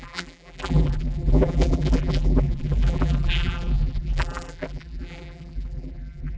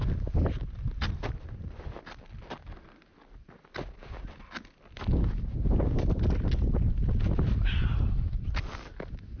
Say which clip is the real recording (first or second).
second